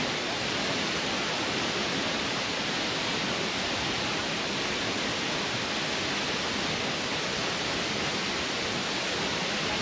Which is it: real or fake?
real